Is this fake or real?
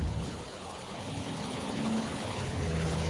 fake